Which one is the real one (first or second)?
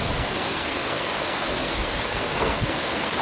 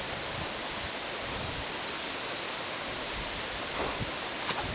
second